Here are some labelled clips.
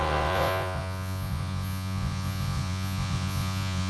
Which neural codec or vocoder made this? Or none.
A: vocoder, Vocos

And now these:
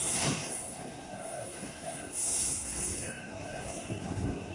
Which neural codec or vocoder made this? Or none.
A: codec, SNAC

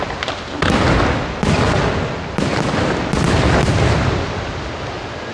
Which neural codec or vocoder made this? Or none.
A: none